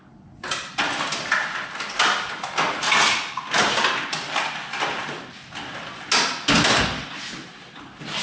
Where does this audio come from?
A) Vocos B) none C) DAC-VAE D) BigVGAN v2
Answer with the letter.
B